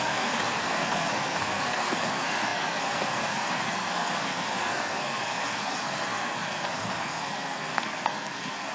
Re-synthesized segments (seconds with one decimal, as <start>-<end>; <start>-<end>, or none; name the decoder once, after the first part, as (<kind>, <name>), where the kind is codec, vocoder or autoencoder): 0.0-8.7 (codec, SNAC)